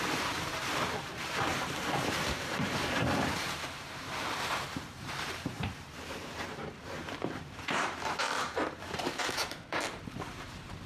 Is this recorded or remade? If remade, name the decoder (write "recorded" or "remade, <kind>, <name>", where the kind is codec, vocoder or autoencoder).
remade, vocoder, BigVGAN v2